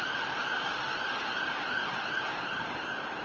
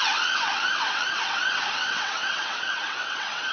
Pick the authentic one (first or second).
first